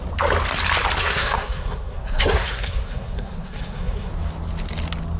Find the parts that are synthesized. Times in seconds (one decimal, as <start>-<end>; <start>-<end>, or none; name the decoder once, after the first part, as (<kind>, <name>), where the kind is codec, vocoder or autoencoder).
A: 1.0-4.1 (codec, SNAC)